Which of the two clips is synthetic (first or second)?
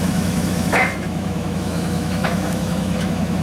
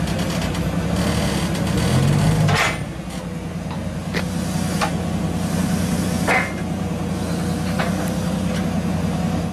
first